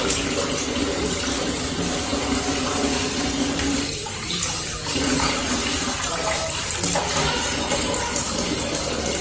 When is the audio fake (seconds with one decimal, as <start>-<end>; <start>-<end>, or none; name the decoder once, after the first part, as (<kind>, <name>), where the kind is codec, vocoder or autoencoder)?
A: none